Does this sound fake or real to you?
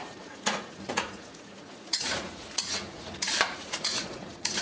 fake